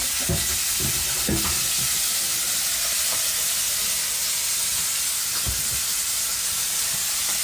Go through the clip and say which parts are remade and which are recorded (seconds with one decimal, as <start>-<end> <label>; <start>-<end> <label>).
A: 0.0-4.1 remade; 4.1-7.4 recorded